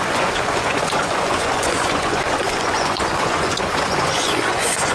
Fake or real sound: fake